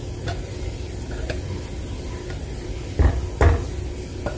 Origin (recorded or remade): recorded